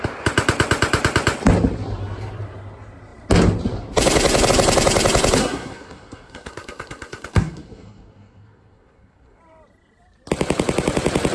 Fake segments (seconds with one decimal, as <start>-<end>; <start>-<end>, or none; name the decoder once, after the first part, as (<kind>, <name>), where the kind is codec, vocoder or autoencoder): 5.4-9.4 (codec, SNAC)